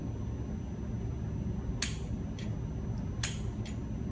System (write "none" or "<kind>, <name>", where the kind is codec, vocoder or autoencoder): none